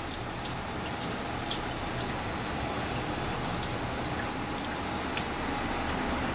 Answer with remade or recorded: recorded